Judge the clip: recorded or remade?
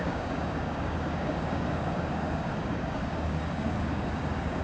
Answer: remade